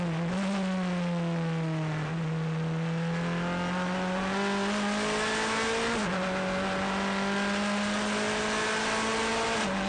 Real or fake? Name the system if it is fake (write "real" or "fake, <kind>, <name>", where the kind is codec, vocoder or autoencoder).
real